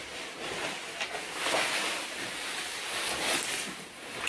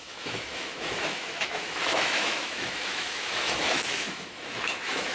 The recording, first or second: first